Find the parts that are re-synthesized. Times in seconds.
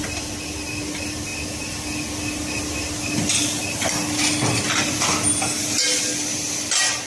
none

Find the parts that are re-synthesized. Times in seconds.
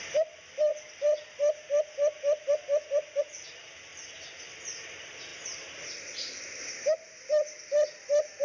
none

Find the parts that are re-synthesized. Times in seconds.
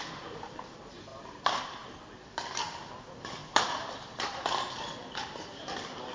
1.1-2.0 (vocoder, BigVGAN v2); 3.4-4.4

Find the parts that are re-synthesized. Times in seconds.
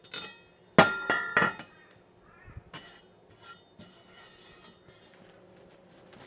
none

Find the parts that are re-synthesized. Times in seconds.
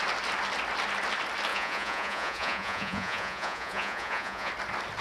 1.5-4.5 (vocoder, Vocos)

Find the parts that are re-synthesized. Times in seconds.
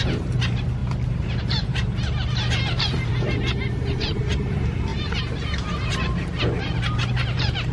0.0-3.1 (vocoder, BigVGAN v2); 3.7-7.7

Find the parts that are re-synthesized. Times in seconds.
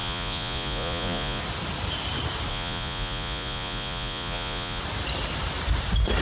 0.0-1.4 (vocoder, Vocos); 2.5-4.8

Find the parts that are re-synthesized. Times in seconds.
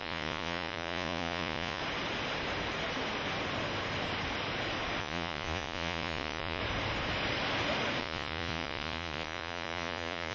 0.0-1.8 (vocoder, Vocos); 5.0-6.6; 8.0-10.3